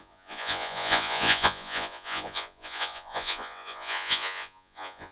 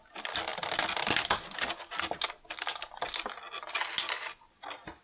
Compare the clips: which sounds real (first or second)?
second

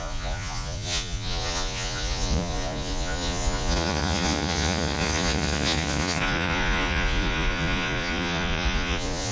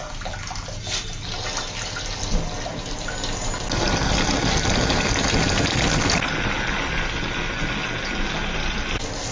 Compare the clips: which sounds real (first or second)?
second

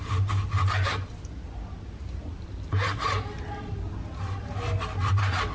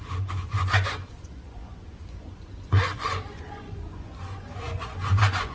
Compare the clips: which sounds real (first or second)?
first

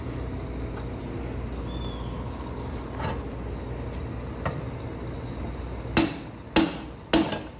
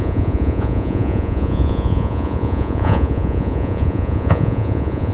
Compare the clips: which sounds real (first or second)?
first